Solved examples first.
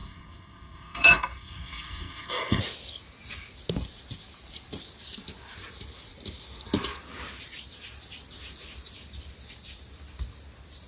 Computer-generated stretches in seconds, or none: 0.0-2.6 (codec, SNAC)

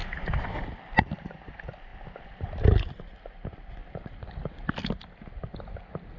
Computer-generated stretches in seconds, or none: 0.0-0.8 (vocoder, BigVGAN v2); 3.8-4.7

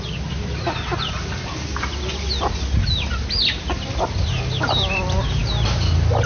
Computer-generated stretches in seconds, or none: none

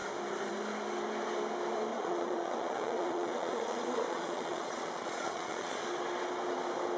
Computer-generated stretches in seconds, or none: 1.9-5.9 (vocoder, Vocos)

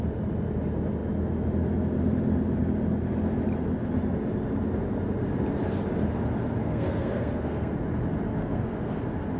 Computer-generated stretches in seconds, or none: 6.6-7.7 (codec, SNAC); 8.4-9.0